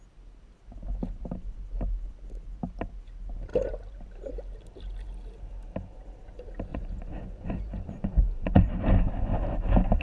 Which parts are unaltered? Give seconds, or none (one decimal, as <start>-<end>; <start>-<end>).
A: 0.0-6.7; 8.7-10.0